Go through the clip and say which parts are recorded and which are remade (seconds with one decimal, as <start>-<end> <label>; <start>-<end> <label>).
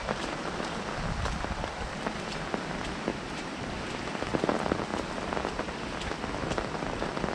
0.0-3.1 recorded; 3.1-3.7 remade; 3.7-7.3 recorded